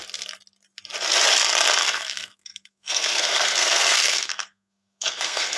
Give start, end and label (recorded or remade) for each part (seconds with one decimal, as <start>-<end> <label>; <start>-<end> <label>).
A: 0.0-1.8 recorded; 1.8-5.6 remade